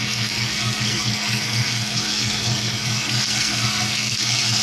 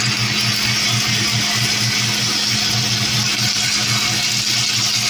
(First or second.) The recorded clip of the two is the second